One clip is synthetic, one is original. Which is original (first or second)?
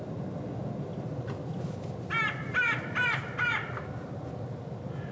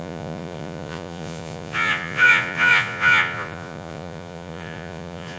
first